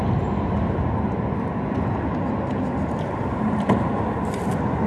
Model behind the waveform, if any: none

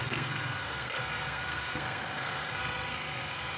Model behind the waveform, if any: codec, SNAC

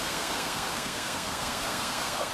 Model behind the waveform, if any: codec, SNAC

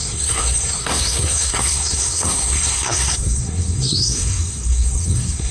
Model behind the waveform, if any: codec, SNAC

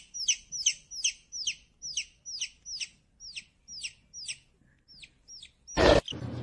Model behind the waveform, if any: none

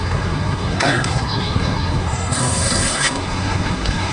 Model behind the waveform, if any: codec, SNAC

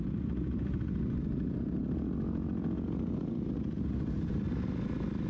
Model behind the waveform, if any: none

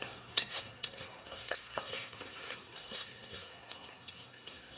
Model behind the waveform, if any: codec, SNAC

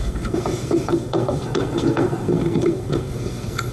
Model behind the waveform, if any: codec, SNAC